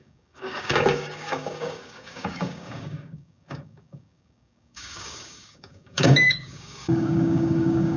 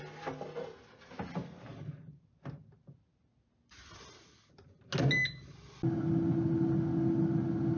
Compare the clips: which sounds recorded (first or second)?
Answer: second